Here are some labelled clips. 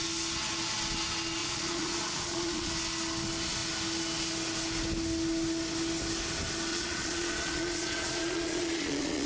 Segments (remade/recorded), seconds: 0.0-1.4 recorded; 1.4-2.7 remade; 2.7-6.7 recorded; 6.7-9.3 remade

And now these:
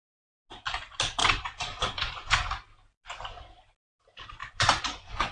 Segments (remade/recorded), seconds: 0.0-1.2 recorded; 1.2-2.5 remade; 2.5-4.4 recorded; 4.4-5.3 remade

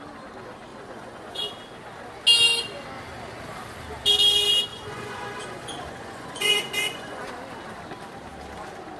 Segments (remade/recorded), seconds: 0.0-0.7 recorded; 0.7-1.5 remade; 1.5-4.7 recorded; 4.7-7.3 remade; 7.3-9.0 recorded

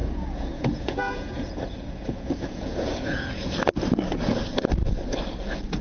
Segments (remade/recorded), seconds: 0.0-3.5 remade; 3.5-5.8 recorded

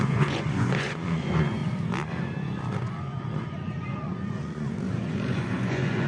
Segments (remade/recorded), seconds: 0.0-1.6 remade; 1.6-2.7 recorded; 2.7-6.1 remade

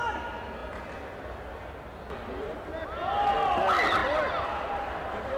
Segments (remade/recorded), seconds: 0.0-5.4 recorded

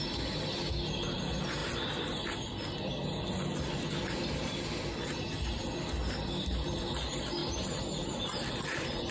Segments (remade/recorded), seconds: 0.0-9.1 recorded